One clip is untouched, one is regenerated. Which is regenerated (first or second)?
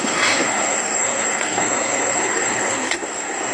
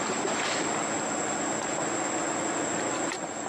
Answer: first